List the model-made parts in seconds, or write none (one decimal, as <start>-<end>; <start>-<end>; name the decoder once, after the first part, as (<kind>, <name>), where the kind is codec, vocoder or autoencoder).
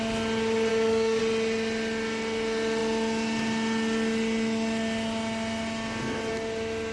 0.7-1.2 (codec, DAC)